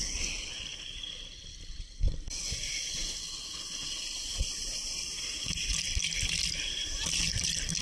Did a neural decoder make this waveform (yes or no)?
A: no